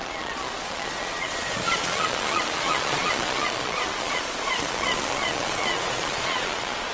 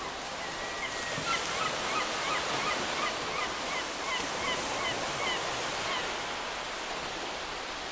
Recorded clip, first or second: second